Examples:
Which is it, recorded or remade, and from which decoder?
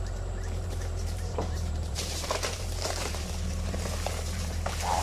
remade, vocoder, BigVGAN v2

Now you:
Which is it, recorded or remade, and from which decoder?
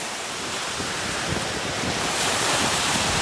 remade, vocoder, BigVGAN v2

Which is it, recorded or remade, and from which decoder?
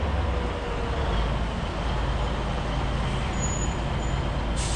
recorded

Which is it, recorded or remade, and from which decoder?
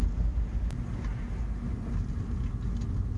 recorded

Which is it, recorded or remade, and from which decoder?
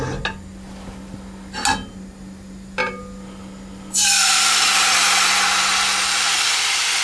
recorded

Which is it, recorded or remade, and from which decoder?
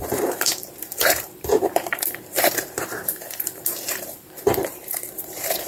remade, vocoder, BigVGAN v2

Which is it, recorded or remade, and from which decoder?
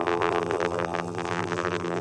remade, vocoder, BigVGAN v2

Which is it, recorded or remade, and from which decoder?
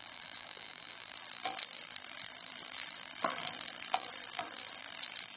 remade, vocoder, BigVGAN v2